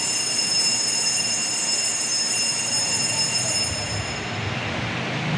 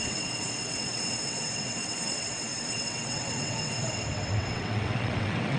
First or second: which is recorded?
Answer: first